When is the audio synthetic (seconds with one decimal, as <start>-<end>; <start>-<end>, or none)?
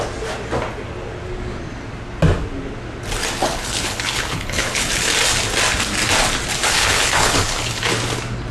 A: 3.4-4.9; 6.6-7.9